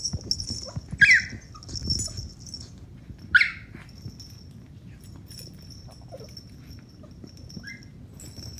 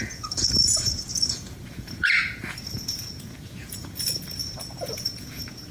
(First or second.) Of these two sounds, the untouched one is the first